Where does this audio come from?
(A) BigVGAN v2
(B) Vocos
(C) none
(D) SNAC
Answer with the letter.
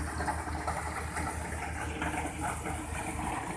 C